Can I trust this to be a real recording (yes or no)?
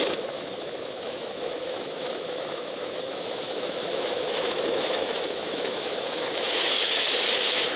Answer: no